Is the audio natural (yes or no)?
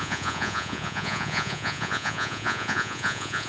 no